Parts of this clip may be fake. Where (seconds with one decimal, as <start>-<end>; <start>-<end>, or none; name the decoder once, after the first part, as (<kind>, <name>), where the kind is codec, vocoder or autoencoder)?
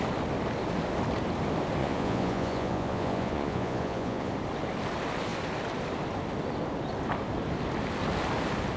1.8-4.3 (vocoder, Vocos)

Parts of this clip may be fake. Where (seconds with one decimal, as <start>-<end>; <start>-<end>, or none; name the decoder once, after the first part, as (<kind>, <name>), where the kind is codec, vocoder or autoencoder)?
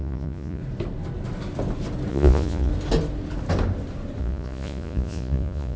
0.0-0.6 (vocoder, Vocos); 2.1-2.7; 4.2-5.8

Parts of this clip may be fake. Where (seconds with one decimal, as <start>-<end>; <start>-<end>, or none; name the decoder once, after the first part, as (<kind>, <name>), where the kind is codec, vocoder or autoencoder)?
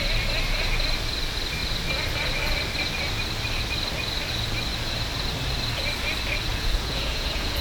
6.5-7.6 (vocoder, Vocos)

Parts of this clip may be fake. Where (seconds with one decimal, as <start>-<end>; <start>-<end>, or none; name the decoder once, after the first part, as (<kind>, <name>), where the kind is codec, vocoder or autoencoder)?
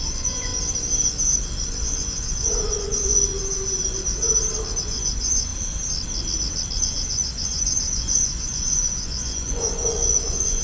0.0-0.5 (vocoder, Vocos); 1.8-3.3; 4.8-5.5; 6.8-10.6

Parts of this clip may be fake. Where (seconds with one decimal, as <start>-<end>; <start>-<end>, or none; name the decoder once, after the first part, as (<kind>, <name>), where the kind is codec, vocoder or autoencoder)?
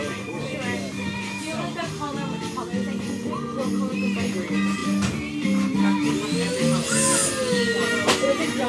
none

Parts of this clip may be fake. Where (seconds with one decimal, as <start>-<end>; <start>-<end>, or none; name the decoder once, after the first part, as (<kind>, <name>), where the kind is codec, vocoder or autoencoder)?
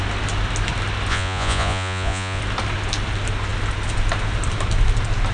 1.1-2.4 (vocoder, Vocos)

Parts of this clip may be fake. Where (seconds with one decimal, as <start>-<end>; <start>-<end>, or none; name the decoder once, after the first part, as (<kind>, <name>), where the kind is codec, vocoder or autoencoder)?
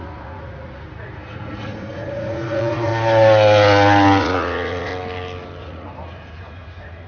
0.0-2.9 (vocoder, Vocos); 4.2-4.9; 5.6-7.1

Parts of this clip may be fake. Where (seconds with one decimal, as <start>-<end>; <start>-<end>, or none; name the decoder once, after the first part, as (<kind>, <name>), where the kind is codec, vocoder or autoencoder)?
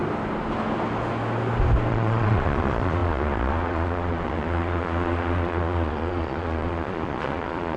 1.9-7.8 (vocoder, Vocos)